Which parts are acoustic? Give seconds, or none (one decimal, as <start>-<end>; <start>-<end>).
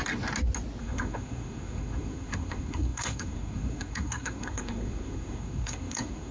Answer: 0.0-0.8